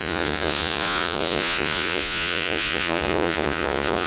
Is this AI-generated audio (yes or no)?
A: yes